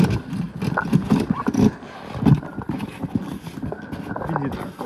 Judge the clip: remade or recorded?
recorded